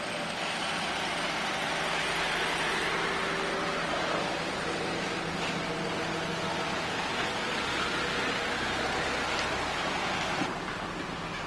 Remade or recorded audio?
recorded